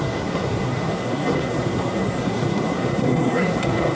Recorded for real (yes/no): no